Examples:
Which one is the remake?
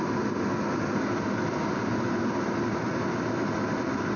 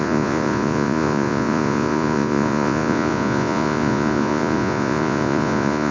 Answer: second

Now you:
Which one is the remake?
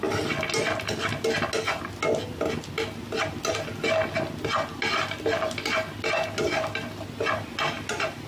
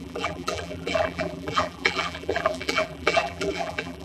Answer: second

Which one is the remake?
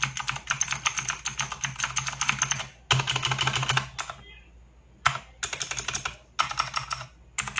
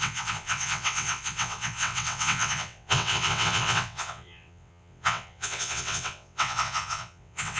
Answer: second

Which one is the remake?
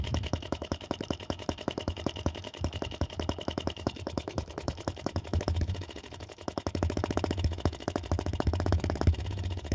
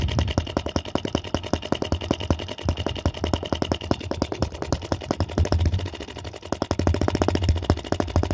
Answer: first